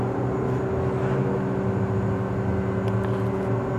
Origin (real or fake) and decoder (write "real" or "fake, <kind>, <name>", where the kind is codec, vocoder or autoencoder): real